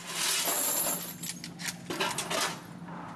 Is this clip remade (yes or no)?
no